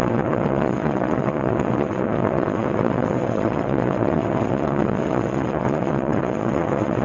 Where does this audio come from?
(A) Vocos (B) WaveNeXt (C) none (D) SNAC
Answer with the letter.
B